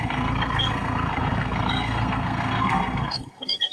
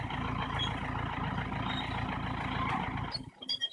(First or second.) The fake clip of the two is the first